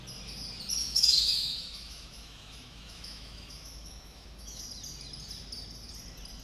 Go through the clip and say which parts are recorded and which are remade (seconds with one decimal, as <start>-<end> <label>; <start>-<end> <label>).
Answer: 0.0-0.8 recorded; 0.8-4.6 remade; 4.6-6.4 recorded